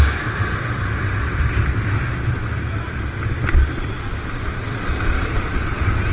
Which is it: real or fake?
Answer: real